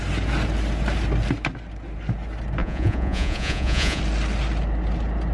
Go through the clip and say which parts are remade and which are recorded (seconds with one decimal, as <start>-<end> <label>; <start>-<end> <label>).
0.0-2.6 recorded; 2.6-4.0 remade; 4.0-5.3 recorded